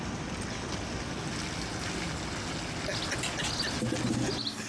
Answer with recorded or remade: recorded